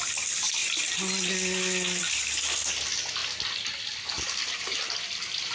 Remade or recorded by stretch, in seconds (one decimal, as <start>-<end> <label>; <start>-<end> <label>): 0.0-5.5 recorded